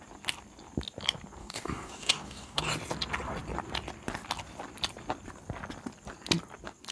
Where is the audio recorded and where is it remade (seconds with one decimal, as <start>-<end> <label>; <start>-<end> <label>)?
0.0-1.4 recorded; 1.4-2.6 remade; 2.6-6.9 recorded